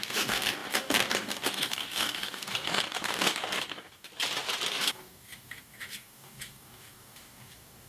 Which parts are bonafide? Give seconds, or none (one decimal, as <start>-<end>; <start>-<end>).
4.1-4.7